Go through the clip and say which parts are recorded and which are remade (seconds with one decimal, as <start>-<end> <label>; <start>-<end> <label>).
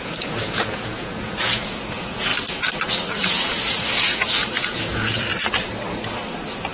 0.0-2.3 remade; 2.3-3.2 recorded; 3.2-5.3 remade; 5.3-6.7 recorded